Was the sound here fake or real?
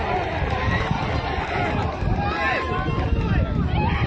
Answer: real